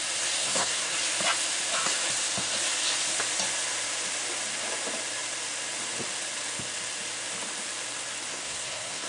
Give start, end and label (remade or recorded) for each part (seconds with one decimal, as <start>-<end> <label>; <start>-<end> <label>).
0.0-0.4 recorded; 0.4-0.9 remade; 0.9-8.3 recorded; 8.3-9.1 remade